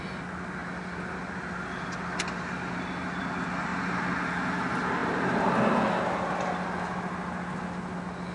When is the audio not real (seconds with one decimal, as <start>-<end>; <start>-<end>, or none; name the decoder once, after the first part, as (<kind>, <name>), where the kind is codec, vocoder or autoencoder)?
none